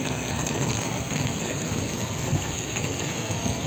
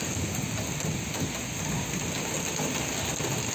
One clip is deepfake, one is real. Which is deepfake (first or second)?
first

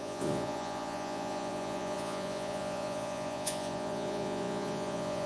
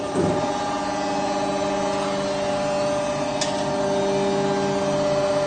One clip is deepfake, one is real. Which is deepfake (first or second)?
first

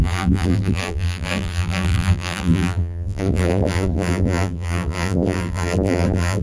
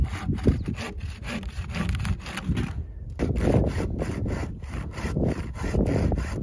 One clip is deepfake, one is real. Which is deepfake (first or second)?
first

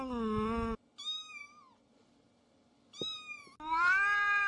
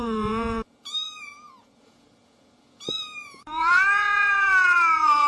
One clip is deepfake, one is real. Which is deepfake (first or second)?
second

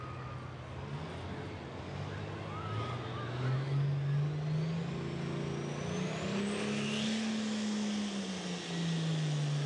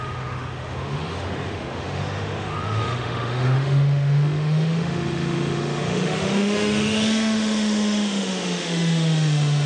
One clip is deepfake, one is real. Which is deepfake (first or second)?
second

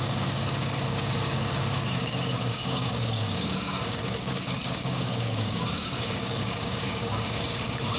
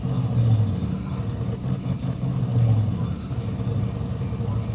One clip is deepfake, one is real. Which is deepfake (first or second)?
first